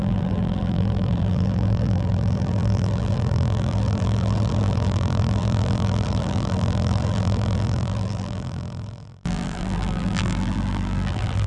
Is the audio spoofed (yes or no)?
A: yes